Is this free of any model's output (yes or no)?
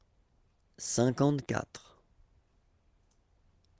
yes